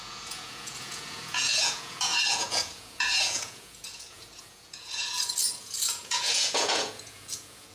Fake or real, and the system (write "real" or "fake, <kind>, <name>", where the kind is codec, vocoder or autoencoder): fake, vocoder, Vocos